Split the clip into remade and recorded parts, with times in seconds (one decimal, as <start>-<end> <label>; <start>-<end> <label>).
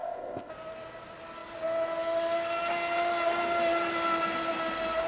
0.0-0.5 remade; 0.5-5.1 recorded